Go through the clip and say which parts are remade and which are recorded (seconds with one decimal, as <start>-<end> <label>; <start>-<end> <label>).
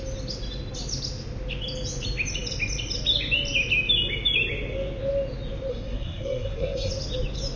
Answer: 0.0-5.7 recorded; 5.7-6.9 remade; 6.9-7.6 recorded